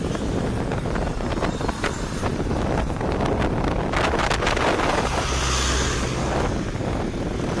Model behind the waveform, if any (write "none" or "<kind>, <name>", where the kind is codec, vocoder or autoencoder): none